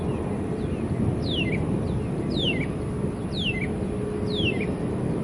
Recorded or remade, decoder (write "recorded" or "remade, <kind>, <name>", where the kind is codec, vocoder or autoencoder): recorded